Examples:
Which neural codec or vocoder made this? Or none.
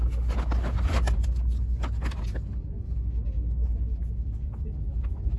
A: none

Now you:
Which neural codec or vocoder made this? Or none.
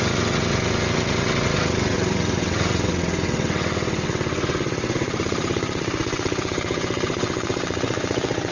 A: vocoder, WaveNeXt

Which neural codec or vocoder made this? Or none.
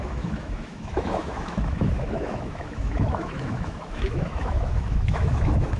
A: autoencoder, DAC-VAE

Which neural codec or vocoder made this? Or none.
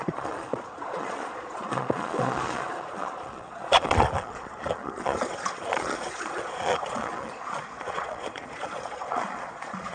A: vocoder, Vocos